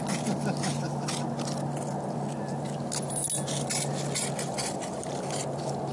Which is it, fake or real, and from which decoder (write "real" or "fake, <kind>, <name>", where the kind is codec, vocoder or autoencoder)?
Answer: real